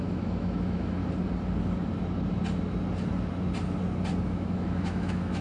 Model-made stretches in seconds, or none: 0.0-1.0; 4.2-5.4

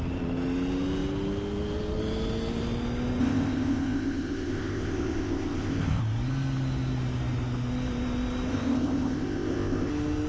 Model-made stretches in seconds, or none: 3.2-6.0; 8.5-9.9

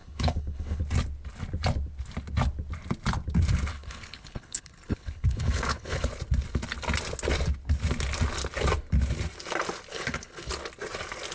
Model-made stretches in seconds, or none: 0.0-0.8; 3.7-6.1; 9.9-10.5

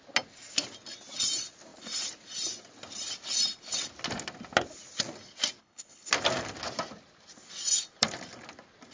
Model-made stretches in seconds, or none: 5.6-6.1

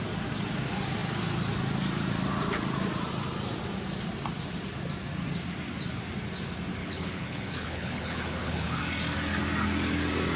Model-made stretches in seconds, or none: 6.8-8.8

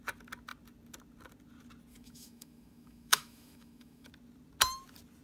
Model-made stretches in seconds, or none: 1.9-4.1

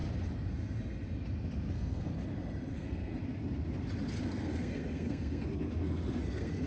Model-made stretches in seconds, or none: 1.7-2.1; 2.7-3.1; 4.2-6.7

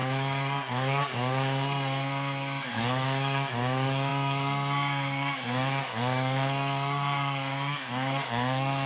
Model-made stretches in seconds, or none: 0.0-8.9